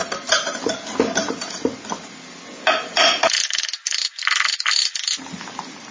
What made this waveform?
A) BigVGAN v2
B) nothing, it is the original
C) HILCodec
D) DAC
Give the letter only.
B